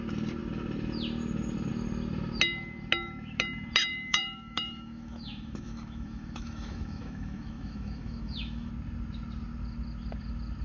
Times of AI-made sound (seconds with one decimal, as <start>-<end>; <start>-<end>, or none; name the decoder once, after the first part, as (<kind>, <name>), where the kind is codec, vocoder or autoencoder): 3.9-8.7 (autoencoder, DAC-VAE)